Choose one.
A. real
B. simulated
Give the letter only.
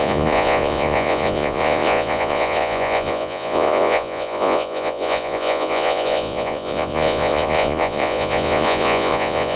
B